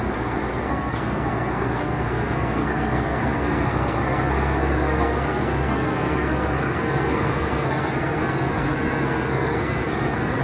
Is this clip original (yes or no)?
no